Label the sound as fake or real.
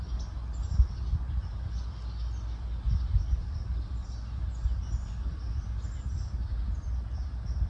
real